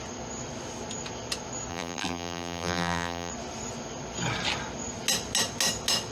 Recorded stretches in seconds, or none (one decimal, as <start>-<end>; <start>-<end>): 0.0-1.7; 3.3-6.1